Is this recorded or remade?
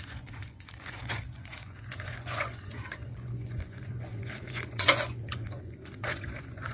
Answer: remade